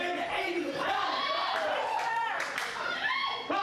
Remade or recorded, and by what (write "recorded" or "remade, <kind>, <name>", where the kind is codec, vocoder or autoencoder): remade, vocoder, BigVGAN v2